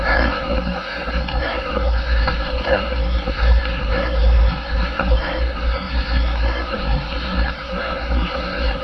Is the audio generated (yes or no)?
yes